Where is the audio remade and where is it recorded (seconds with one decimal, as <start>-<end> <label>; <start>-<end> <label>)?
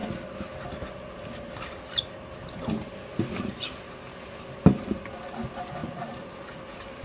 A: 0.0-7.0 recorded